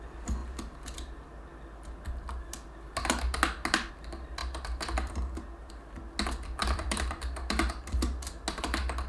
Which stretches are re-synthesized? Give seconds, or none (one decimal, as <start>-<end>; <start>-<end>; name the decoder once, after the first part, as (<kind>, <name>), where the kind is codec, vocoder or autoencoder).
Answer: 4.4-5.7 (vocoder, BigVGAN v2); 6.6-7.1